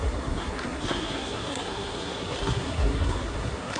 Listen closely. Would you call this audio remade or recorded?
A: remade